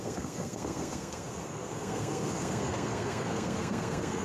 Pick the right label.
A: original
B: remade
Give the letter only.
B